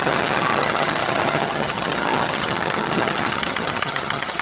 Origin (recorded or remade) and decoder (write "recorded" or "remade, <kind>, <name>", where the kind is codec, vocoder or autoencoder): remade, vocoder, HiFi-GAN